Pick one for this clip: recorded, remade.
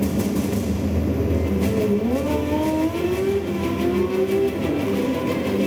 recorded